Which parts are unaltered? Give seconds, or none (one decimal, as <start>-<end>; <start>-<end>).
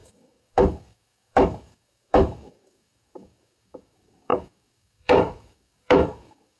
none